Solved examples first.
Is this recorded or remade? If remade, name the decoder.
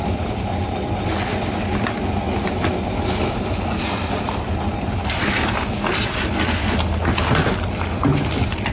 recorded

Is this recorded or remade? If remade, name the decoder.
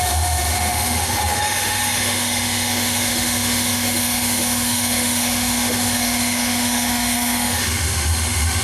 remade, autoencoder, DAC-VAE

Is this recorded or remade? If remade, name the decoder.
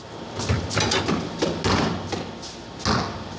recorded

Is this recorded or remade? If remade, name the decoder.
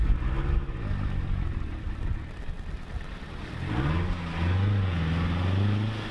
recorded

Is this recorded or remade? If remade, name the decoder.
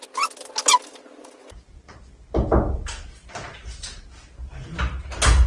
recorded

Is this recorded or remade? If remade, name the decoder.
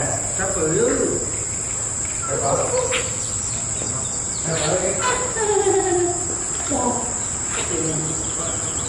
recorded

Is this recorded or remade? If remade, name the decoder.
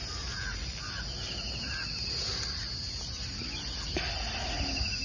recorded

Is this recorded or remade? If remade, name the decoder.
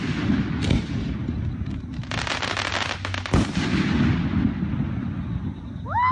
recorded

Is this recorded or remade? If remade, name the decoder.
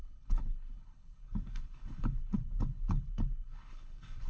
remade, codec, HILCodec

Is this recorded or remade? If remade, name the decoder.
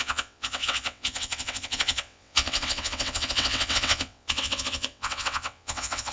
remade, vocoder, WaveNeXt